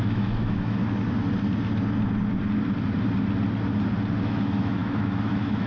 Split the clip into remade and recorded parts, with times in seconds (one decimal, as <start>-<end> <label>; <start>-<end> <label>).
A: 0.0-0.8 remade; 0.8-4.2 recorded; 4.2-5.7 remade